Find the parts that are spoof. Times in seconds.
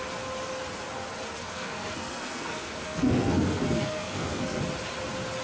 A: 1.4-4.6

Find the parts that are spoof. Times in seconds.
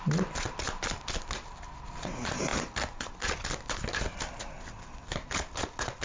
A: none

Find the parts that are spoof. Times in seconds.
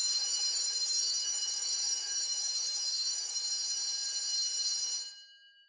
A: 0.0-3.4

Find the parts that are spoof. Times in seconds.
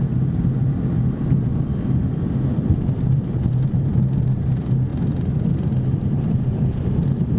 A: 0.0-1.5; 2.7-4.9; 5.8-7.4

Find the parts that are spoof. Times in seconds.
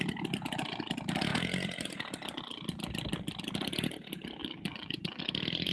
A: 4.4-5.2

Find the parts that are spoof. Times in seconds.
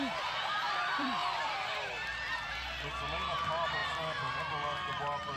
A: 0.0-3.8; 4.4-5.4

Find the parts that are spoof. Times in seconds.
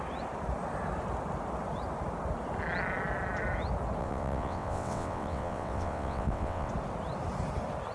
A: 4.0-6.7